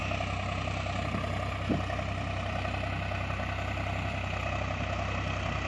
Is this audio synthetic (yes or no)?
no